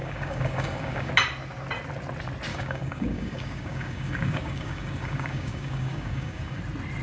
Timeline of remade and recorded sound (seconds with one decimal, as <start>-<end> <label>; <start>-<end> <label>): 0.0-1.1 remade; 1.1-2.5 recorded; 2.5-6.6 remade; 6.6-7.0 recorded